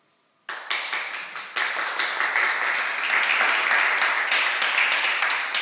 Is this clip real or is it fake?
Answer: real